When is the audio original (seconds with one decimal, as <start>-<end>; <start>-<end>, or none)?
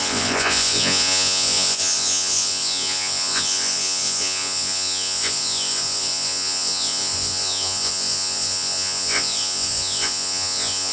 none